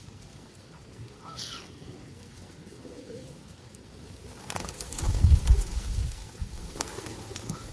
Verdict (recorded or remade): remade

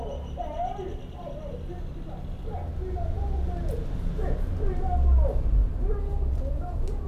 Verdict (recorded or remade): recorded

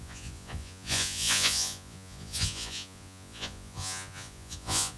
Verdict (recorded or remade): remade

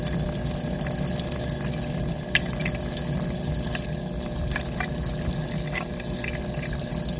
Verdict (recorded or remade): recorded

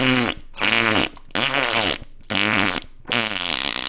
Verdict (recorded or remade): recorded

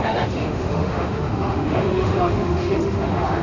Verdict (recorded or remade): remade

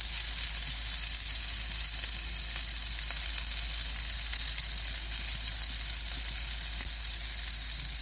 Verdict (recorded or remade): recorded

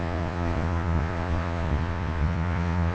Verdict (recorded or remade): remade